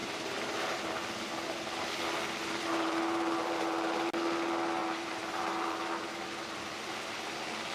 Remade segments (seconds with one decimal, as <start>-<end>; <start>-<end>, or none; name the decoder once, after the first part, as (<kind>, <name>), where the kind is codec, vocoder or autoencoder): 0.0-1.0 (vocoder, BigVGAN v2); 2.4-4.1; 4.8-5.8